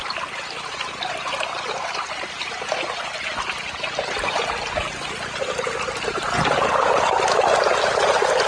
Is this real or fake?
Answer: real